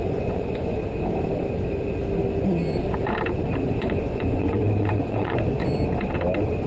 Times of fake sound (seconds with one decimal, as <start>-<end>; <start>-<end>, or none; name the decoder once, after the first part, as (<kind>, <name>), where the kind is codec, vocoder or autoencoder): 0.0-0.8 (vocoder, Vocos); 3.7-5.6